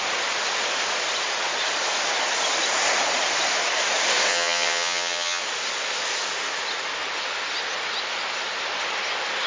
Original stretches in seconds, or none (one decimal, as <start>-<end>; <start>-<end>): 0.0-4.3; 5.4-9.5